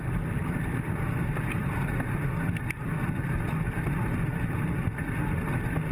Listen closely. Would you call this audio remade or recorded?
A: recorded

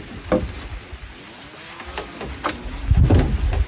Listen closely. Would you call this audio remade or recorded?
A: recorded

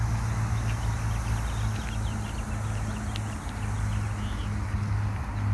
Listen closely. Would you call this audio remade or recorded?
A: recorded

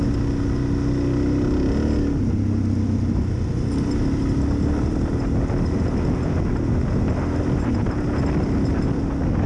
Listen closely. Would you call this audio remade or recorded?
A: recorded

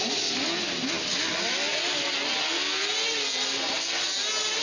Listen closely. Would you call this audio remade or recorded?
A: recorded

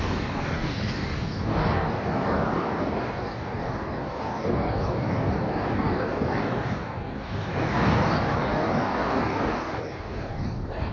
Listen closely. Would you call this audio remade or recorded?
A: remade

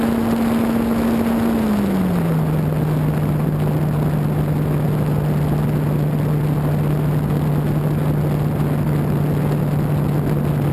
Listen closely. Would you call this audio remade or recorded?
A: recorded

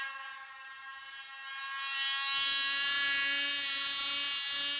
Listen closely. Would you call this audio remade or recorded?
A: recorded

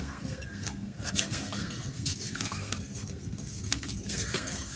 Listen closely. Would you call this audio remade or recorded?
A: remade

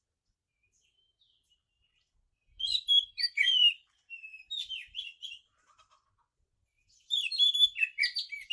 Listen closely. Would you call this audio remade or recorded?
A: remade